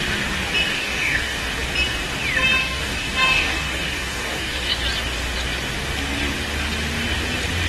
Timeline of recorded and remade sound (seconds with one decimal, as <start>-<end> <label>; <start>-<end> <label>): 0.0-0.7 recorded; 0.7-1.5 remade; 1.5-2.6 recorded; 2.6-4.7 remade; 4.7-7.7 recorded